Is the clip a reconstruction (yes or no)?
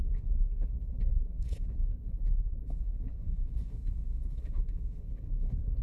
yes